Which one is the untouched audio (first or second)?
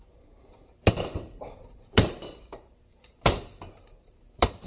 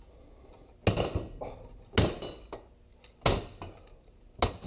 second